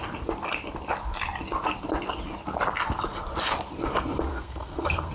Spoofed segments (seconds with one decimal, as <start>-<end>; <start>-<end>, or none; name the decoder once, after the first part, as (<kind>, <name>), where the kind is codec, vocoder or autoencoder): 4.3-5.1 (codec, SNAC)